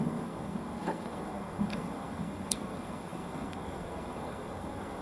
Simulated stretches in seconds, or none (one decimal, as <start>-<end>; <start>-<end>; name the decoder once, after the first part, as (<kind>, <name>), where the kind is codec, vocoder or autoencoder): 0.0-5.0 (codec, SNAC)